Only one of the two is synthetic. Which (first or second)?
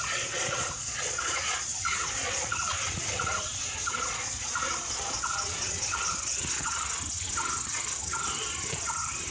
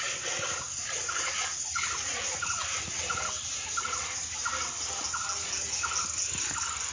first